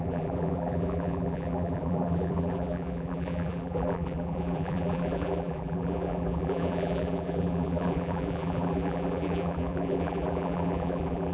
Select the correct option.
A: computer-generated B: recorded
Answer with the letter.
A